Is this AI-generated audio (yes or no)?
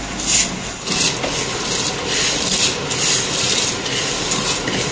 no